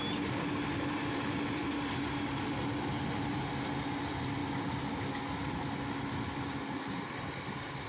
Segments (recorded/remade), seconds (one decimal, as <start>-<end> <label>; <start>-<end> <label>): 0.0-7.9 recorded